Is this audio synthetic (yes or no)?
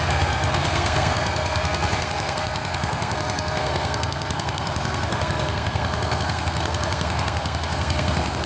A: yes